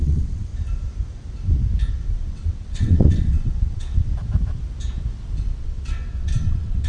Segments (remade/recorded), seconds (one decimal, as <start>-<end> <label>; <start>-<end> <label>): 0.0-0.5 remade; 0.5-1.9 recorded; 1.9-4.1 remade; 4.1-5.6 recorded; 5.6-6.9 remade